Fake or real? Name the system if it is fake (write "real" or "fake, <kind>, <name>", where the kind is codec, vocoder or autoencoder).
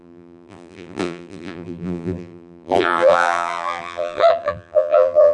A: fake, vocoder, BigVGAN v2